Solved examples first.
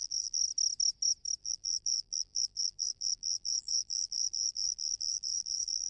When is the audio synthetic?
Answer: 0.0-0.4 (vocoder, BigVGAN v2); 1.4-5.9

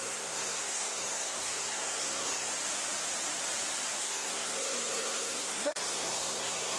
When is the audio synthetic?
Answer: 0.0-2.5 (codec, SNAC); 4.0-6.8

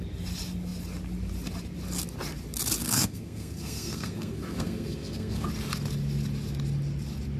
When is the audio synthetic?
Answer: 2.8-5.5 (codec, SNAC)

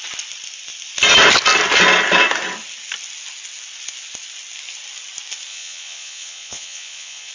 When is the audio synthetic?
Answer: 5.5-7.3 (vocoder, Vocos)

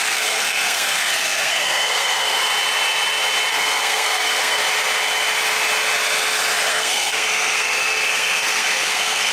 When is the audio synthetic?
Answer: 0.0-2.5 (codec, SNAC); 3.5-4.6; 6.7-9.3

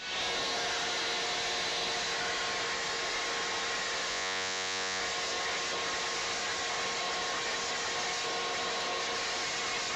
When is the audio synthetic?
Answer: 4.1-5.0 (vocoder, Vocos)

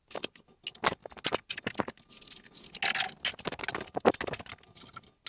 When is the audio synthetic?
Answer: none

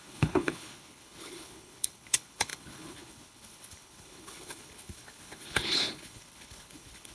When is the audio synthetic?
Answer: 0.0-7.1 (codec, HILCodec)